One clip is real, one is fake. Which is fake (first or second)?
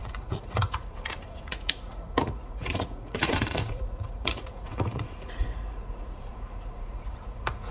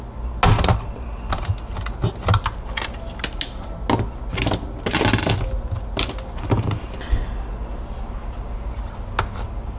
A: first